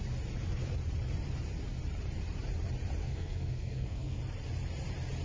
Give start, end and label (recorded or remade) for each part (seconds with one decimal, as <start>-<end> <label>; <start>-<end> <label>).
0.0-3.0 recorded; 3.0-4.2 remade; 4.2-5.2 recorded